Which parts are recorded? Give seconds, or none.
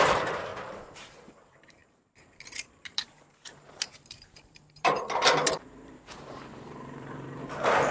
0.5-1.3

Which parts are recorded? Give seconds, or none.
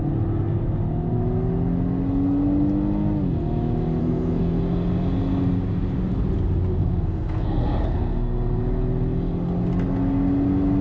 0.0-4.0; 4.6-6.8; 8.6-10.8